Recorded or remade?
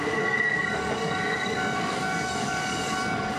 remade